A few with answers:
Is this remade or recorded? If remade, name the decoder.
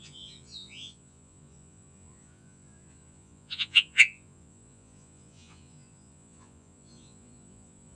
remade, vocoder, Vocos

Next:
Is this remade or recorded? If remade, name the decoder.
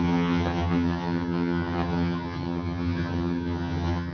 remade, vocoder, HiFi-GAN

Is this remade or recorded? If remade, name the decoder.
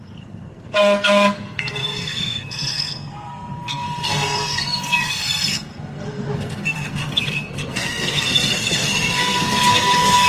remade, codec, SNAC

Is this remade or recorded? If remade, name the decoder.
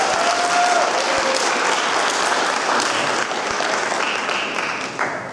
recorded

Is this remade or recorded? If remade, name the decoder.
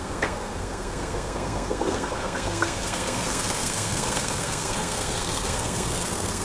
remade, codec, SNAC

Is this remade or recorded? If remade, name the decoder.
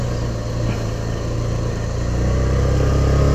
recorded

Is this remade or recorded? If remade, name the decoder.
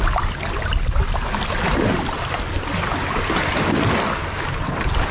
recorded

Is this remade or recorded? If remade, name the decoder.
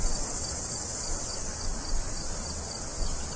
recorded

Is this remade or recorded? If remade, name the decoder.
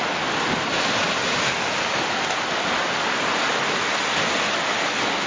recorded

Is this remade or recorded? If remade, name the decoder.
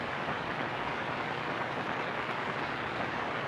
remade, codec, DAC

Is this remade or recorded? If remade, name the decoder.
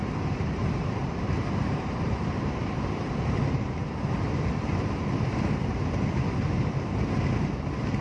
remade, vocoder, BigVGAN v2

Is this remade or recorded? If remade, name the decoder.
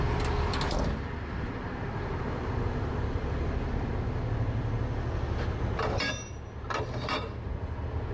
recorded